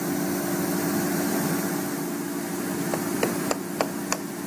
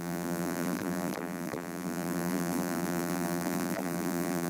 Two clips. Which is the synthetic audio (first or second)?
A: second